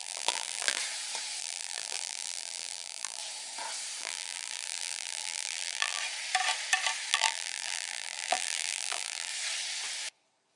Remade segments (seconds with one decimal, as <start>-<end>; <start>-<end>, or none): 0.0-0.8; 1.4-3.2; 4.0-6.0; 7.1-9.3